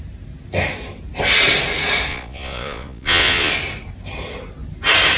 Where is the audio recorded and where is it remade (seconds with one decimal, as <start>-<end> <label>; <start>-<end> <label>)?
0.0-2.1 recorded; 2.1-3.5 remade; 3.5-5.2 recorded